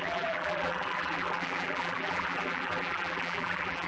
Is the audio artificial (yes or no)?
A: yes